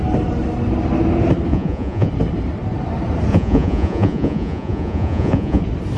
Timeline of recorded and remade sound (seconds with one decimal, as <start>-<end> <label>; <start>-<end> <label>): 0.0-1.5 recorded; 1.5-2.1 remade; 2.1-3.3 recorded; 3.3-5.6 remade; 5.6-6.0 recorded

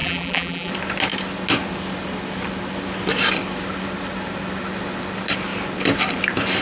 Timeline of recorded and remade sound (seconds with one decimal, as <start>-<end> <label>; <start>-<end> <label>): 0.0-0.7 remade; 0.7-6.6 recorded